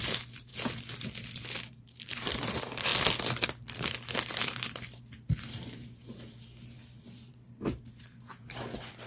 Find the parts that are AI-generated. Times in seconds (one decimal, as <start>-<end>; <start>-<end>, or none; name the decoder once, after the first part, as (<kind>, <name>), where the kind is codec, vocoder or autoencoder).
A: 0.0-0.5 (vocoder, BigVGAN v2); 1.7-2.9; 5.0-9.1